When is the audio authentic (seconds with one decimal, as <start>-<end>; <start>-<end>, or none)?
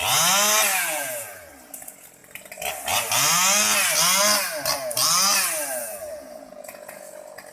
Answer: 0.0-0.7; 1.5-5.8